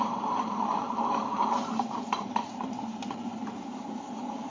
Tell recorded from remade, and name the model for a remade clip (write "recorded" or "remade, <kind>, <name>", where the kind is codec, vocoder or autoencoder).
remade, vocoder, BigVGAN v2